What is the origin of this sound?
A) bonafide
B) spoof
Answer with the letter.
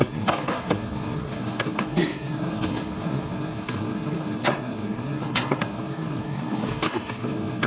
B